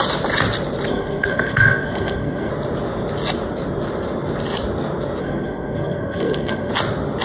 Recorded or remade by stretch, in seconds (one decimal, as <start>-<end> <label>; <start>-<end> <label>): 0.0-0.9 recorded; 0.9-2.5 remade; 2.5-5.2 recorded; 5.2-6.7 remade; 6.7-7.2 recorded